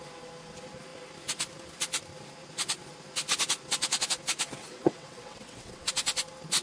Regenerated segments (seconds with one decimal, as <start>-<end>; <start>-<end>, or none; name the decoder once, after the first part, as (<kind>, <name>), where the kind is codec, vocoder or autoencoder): 4.6-5.9 (vocoder, WaveNeXt)

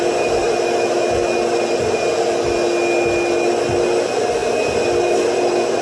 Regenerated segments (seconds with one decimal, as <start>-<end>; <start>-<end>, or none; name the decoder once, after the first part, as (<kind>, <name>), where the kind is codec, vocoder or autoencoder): none

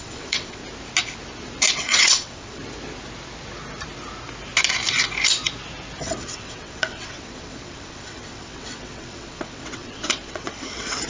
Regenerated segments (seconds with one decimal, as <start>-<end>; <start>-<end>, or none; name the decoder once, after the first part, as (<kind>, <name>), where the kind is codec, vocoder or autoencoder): 0.0-0.6 (vocoder, WaveNeXt); 1.7-2.6; 6.0-11.1